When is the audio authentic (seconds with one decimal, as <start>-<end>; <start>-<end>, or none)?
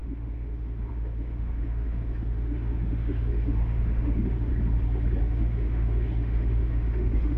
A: 4.5-5.2